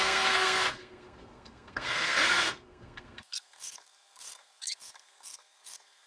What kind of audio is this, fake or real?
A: fake